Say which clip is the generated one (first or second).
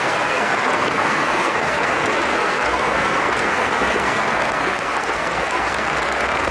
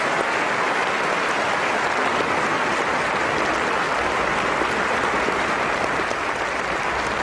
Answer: first